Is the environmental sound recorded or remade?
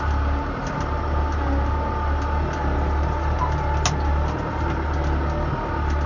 recorded